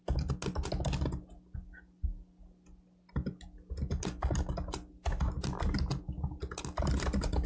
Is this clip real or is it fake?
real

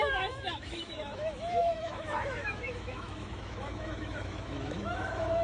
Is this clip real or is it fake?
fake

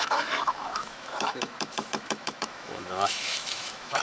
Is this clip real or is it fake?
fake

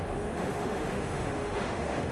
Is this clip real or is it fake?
fake